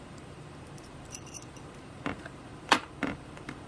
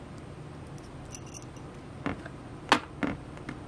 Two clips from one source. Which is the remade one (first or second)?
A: first